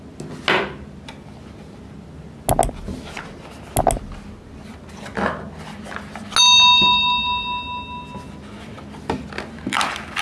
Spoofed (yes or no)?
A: no